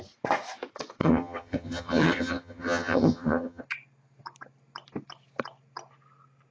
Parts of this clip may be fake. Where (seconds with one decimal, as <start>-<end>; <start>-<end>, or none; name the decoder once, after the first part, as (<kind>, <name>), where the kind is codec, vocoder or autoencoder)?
1.0-3.6 (vocoder, HiFi-GAN)